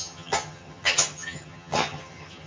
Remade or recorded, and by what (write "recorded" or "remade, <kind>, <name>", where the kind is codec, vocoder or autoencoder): remade, vocoder, HiFi-GAN